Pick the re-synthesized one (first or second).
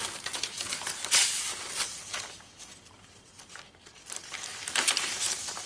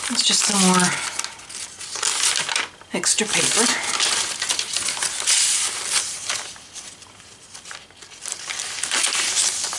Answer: first